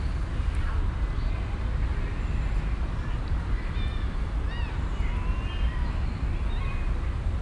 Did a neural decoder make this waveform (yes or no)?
no